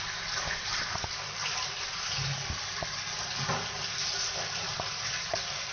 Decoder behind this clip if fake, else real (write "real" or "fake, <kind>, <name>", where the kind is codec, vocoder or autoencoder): fake, vocoder, BigVGAN v2